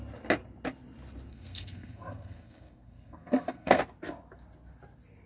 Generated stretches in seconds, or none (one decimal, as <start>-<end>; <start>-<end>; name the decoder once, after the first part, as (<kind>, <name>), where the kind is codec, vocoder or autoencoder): 1.3-3.8 (codec, SNAC)

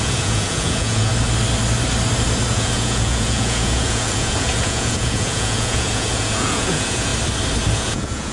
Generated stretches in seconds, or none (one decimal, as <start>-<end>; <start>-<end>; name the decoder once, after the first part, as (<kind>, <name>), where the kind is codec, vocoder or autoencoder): 0.0-1.1 (vocoder, Vocos); 2.5-7.1; 7.7-8.3

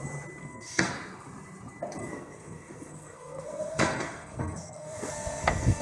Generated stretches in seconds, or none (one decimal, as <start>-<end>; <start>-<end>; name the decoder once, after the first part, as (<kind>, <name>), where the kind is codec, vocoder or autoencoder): 0.4-0.9 (codec, SNAC); 2.0-5.8

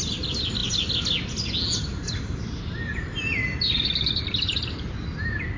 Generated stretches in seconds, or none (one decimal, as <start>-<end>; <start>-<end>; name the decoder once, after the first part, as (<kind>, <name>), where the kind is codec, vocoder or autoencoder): none

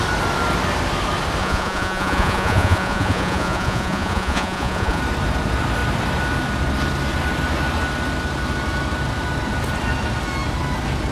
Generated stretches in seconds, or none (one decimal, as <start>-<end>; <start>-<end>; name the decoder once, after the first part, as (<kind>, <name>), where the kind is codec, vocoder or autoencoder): 1.4-5.0 (vocoder, Vocos)

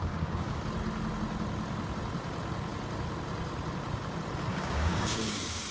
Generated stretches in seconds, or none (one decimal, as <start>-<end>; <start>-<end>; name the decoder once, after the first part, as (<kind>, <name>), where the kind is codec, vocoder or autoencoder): 0.0-0.6 (codec, DAC); 4.5-5.7

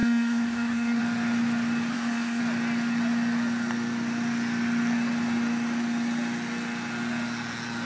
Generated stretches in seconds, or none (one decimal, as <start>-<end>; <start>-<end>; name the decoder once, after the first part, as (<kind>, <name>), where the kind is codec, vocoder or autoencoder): 0.0-1.0 (codec, SNAC); 1.9-2.4

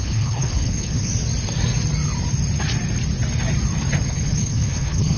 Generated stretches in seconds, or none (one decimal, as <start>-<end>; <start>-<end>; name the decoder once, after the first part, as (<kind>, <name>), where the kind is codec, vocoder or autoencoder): 0.0-1.1 (codec, HILCodec); 4.1-5.2